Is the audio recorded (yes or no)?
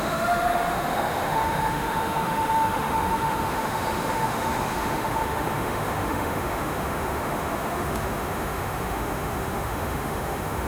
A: no